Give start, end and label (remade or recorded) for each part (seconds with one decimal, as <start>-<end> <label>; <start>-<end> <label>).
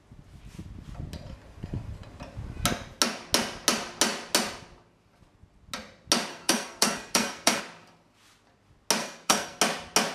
0.0-6.3 recorded; 6.3-7.6 remade; 7.6-9.0 recorded; 9.0-9.6 remade; 9.6-10.1 recorded